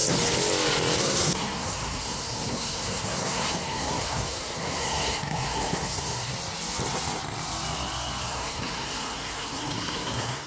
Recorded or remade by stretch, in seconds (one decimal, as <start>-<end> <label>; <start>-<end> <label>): 0.0-1.0 recorded; 1.0-6.3 remade; 6.3-8.2 recorded; 8.2-10.5 remade